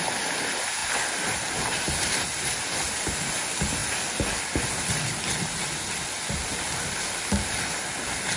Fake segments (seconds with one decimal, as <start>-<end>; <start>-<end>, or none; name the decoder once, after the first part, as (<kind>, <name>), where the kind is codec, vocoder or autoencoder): none